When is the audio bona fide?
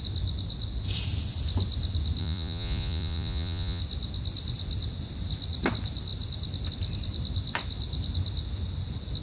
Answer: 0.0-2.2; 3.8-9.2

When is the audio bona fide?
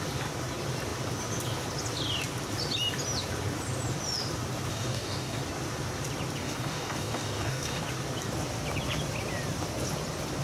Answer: 0.0-4.7; 5.4-6.4; 7.8-10.4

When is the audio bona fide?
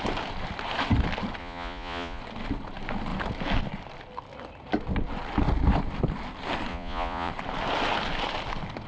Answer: 0.0-1.4; 2.2-6.7; 7.3-8.9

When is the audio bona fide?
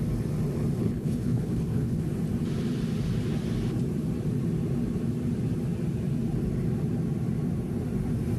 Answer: 0.0-0.8; 2.0-8.4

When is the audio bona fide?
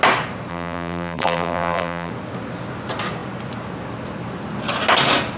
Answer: 0.0-0.5; 2.1-5.4